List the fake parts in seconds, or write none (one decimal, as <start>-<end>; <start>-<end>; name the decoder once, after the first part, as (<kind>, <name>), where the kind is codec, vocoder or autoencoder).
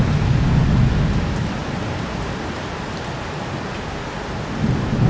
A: none